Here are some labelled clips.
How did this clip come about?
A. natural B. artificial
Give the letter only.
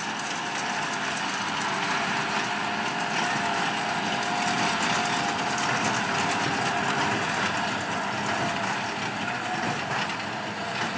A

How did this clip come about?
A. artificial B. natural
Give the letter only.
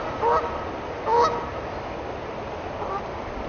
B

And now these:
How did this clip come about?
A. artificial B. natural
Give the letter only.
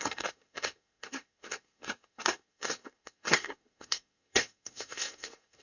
A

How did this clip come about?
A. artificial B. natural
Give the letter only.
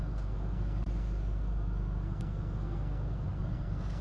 A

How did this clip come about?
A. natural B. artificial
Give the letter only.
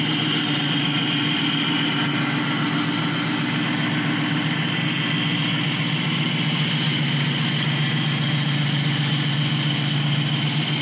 A